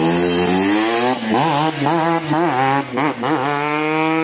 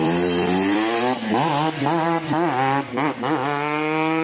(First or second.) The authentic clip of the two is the first